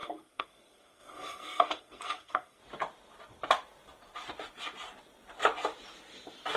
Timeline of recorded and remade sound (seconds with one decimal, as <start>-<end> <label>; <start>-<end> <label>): 0.0-2.6 remade; 2.6-6.6 recorded